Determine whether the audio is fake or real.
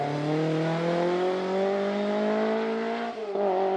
real